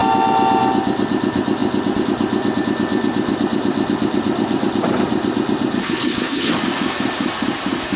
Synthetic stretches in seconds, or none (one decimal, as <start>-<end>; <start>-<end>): 5.8-6.5